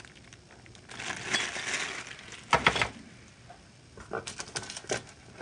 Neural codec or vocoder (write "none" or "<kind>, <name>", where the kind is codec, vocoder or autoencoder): none